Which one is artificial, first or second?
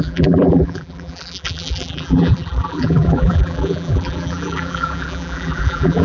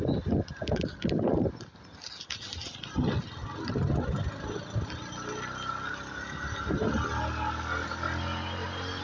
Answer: first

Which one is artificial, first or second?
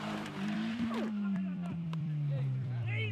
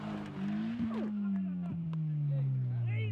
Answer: first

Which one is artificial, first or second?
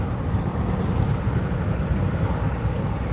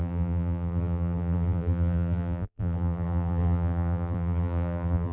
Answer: second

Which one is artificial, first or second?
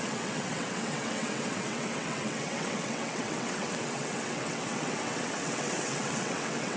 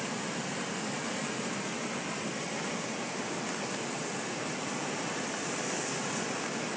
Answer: first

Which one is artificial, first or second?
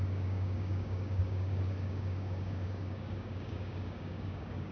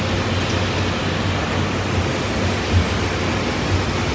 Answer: first